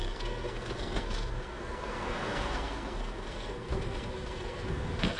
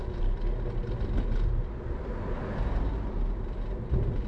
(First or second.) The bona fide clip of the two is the second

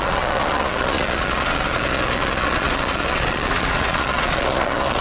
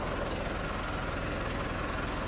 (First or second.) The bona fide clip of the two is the second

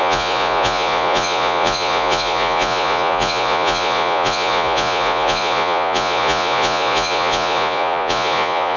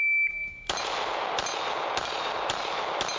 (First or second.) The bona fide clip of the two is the second